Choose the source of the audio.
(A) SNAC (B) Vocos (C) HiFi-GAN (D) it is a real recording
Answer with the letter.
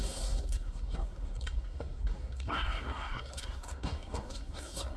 A